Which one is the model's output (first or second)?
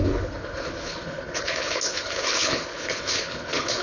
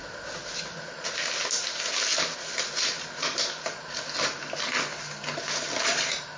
first